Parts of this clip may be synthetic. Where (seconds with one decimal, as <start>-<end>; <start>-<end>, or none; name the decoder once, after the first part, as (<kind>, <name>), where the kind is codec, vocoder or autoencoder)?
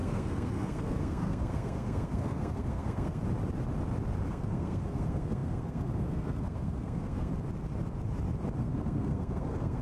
0.0-3.2 (codec, SNAC); 4.3-7.3; 8.6-9.8